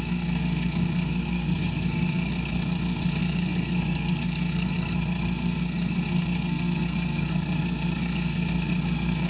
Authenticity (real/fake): fake